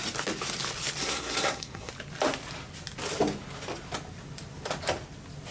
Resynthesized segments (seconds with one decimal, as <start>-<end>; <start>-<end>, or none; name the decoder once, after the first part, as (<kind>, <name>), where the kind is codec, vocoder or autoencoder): 1.0-1.9 (codec, SNAC)